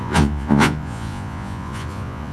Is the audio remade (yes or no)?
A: yes